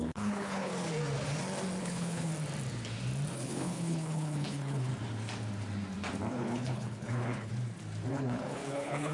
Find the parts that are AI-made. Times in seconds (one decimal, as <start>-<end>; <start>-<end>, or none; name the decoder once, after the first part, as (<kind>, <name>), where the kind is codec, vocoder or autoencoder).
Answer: 0.0-0.7 (codec, HILCodec); 1.8-2.3; 3.3-4.9; 6.3-7.5; 8.1-9.1